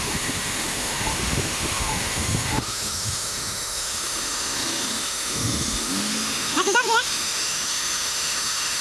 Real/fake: fake